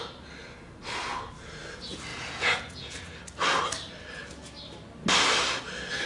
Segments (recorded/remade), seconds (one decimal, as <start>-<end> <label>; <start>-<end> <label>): 0.0-2.1 recorded; 2.1-3.0 remade; 3.0-6.1 recorded